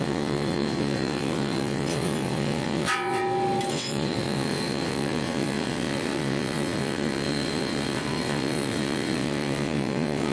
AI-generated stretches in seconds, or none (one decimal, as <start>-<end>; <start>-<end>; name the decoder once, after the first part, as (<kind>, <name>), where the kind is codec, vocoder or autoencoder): 0.0-3.2 (vocoder, WaveNeXt); 3.7-10.3